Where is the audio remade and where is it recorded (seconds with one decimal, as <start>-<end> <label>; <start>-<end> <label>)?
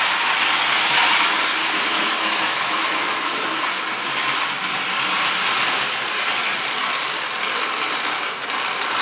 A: 0.0-1.6 recorded; 1.6-3.3 remade; 3.3-9.0 recorded